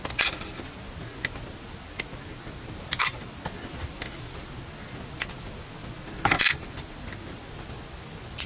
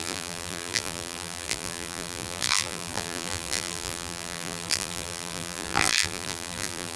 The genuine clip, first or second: first